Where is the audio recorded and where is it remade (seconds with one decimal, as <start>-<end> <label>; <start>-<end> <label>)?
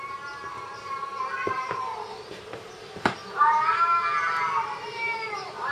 0.0-5.7 remade